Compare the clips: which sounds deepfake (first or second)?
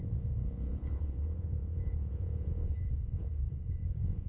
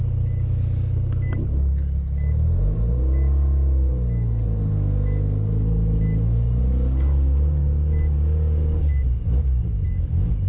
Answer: first